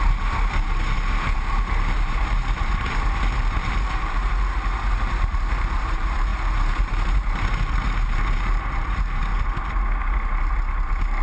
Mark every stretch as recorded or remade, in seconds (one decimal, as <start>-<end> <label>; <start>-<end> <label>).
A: 0.0-4.3 remade; 4.3-4.9 recorded; 4.9-9.3 remade; 9.3-10.7 recorded; 10.7-11.2 remade